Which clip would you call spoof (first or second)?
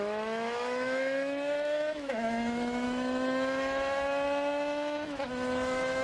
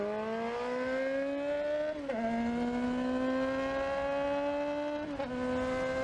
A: first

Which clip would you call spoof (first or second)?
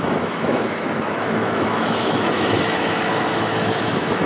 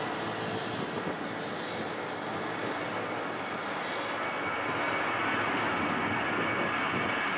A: first